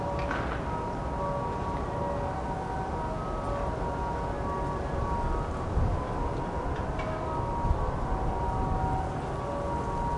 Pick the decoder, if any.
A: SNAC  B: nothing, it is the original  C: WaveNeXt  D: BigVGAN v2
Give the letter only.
B